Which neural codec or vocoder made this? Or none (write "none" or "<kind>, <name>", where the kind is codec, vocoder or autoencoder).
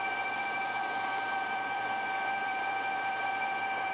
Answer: vocoder, BigVGAN v2